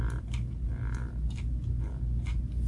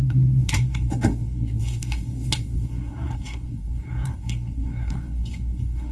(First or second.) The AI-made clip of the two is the second